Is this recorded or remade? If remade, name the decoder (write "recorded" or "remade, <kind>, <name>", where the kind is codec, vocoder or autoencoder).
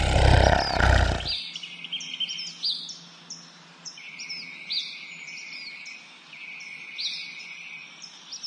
recorded